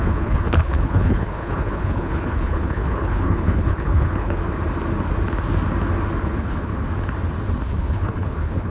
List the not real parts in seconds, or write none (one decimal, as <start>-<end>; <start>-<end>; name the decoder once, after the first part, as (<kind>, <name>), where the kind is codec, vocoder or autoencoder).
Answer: 0.0-4.4 (codec, HILCodec); 6.2-6.7; 7.7-8.7